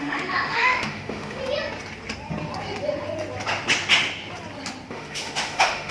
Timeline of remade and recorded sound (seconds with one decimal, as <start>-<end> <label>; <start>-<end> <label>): 0.0-1.4 remade; 1.4-4.9 recorded; 4.9-5.9 remade